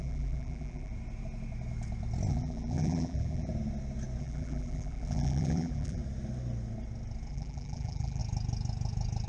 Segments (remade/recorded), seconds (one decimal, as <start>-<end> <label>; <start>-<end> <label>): 0.0-0.9 remade; 0.9-2.3 recorded; 2.3-3.5 remade; 3.5-4.2 recorded; 4.2-6.0 remade; 6.0-7.3 recorded; 7.3-8.2 remade; 8.2-9.3 recorded